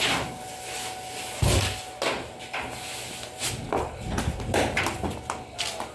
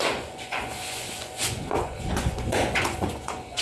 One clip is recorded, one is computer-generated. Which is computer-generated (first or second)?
second